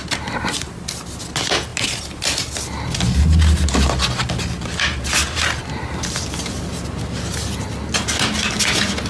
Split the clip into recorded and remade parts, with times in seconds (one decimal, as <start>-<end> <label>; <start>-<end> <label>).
0.0-9.1 recorded